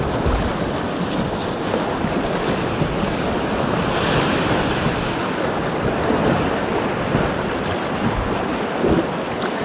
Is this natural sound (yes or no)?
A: yes